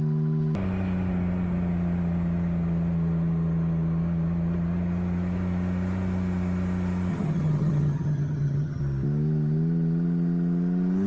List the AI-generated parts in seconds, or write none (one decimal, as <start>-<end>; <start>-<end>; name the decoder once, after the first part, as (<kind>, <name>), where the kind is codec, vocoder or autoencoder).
7.1-8.8 (vocoder, HiFi-GAN)